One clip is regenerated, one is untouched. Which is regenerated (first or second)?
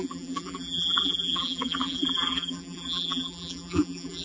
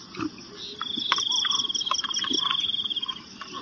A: first